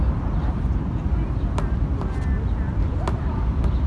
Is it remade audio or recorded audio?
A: recorded